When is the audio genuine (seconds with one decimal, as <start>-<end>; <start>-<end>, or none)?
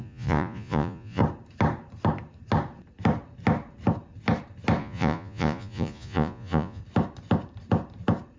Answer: 1.2-4.8; 6.8-8.4